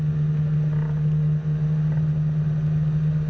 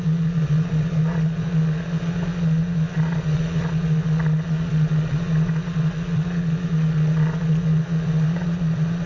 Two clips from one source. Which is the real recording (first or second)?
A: first